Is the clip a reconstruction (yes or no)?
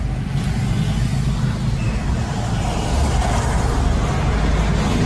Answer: no